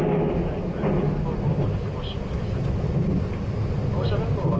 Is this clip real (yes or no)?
yes